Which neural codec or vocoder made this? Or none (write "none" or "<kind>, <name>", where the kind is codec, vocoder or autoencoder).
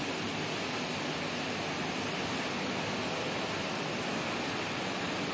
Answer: none